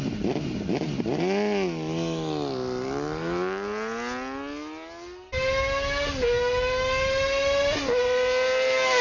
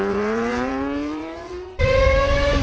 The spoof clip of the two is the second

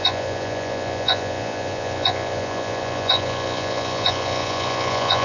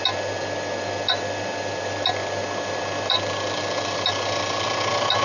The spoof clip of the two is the first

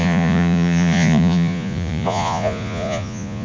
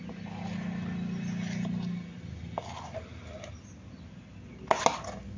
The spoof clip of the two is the first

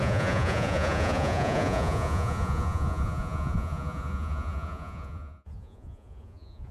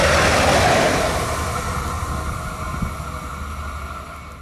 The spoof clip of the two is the first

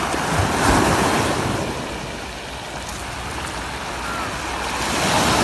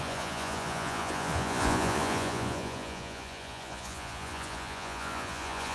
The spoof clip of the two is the second